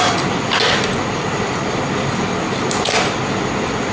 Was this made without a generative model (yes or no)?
yes